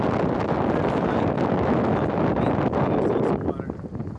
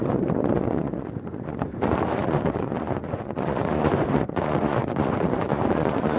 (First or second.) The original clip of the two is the first